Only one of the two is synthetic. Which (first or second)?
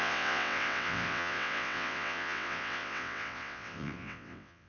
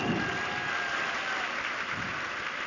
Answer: first